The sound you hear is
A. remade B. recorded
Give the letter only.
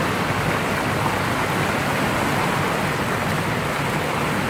B